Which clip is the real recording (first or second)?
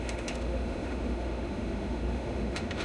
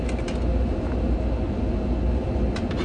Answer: second